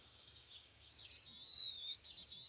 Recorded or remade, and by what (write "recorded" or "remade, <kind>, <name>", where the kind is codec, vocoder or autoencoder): remade, codec, DAC